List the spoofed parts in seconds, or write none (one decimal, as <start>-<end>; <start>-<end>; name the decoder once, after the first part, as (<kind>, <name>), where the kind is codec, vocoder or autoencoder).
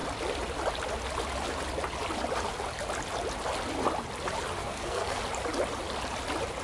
4.6-5.2 (codec, SNAC)